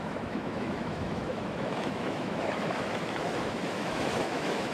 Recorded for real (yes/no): no